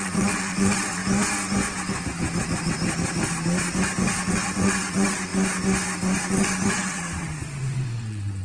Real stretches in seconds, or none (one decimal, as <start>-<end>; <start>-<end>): 1.0-4.3; 5.3-6.3